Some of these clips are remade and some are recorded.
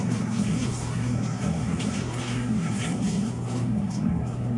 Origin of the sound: remade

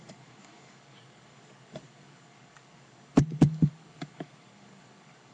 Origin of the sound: remade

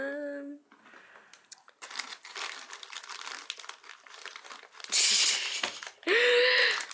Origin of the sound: recorded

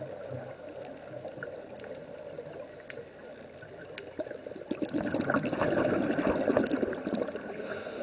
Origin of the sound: recorded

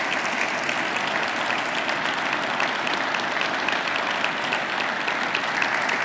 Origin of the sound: recorded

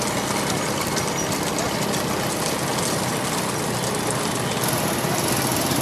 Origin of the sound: recorded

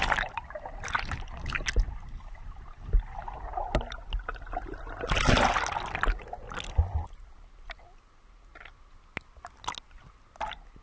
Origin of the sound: recorded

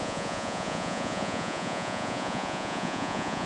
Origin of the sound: remade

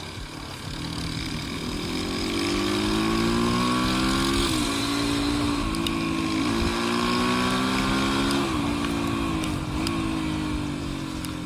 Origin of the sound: recorded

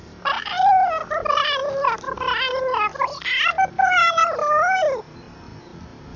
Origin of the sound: recorded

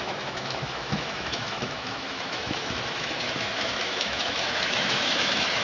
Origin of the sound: remade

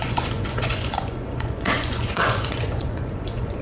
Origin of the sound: remade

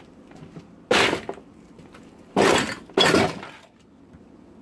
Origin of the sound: recorded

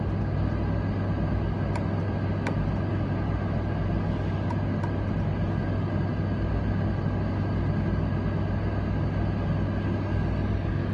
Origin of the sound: recorded